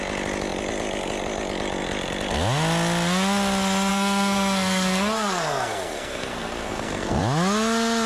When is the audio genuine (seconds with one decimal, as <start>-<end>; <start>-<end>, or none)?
0.0-3.9; 7.2-8.1